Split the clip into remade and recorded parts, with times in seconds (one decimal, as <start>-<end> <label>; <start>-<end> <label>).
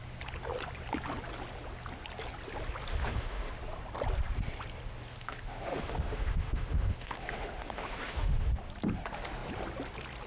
0.0-2.9 recorded; 2.9-3.5 remade; 3.5-5.1 recorded; 5.1-8.5 remade; 8.5-10.3 recorded